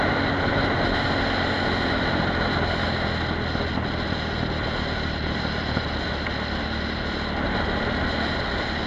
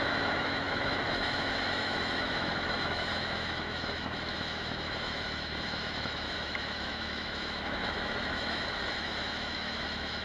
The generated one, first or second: second